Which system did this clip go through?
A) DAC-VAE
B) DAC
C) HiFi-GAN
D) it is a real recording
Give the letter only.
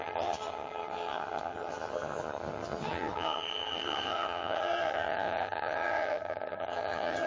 C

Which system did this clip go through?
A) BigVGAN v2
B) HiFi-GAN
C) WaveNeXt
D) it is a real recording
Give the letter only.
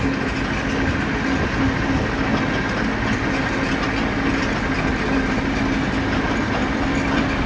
D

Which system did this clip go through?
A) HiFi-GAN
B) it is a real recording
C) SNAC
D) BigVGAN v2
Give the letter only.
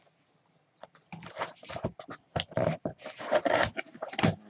B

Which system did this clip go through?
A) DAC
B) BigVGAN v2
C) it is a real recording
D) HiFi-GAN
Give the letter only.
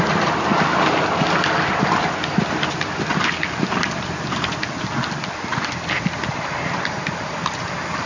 C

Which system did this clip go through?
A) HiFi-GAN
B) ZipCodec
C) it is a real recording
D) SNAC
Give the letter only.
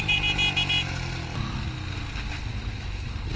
C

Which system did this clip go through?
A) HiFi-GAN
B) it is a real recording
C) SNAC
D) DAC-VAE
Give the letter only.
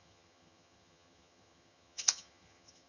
A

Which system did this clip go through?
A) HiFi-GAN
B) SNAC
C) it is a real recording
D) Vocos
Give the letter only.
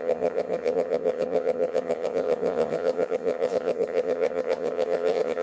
A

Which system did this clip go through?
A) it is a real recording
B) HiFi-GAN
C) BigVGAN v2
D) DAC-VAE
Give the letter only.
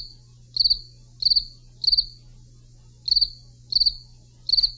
A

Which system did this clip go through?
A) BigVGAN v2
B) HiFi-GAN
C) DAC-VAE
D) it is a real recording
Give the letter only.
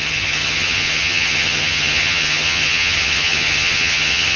B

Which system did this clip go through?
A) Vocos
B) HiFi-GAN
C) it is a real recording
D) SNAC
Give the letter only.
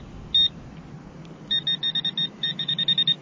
C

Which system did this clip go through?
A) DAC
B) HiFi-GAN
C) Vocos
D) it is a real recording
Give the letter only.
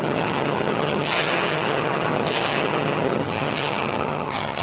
B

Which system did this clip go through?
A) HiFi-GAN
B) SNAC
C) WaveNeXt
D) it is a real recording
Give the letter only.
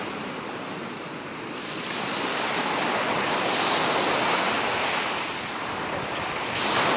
D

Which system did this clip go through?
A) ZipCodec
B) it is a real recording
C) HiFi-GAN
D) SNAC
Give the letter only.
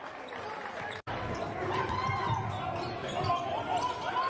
B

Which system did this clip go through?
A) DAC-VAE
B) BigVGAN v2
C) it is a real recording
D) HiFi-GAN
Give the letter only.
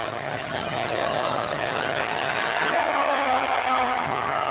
D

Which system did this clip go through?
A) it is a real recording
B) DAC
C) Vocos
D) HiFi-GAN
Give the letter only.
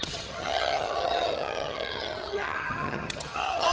D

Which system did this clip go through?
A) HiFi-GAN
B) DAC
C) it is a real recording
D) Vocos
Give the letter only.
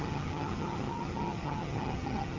A